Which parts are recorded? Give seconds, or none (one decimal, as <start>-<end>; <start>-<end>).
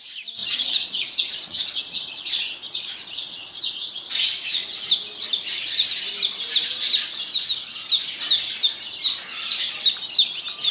0.0-0.4; 4.7-10.7